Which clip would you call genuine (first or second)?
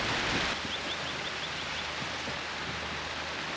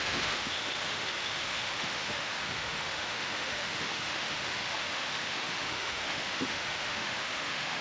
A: first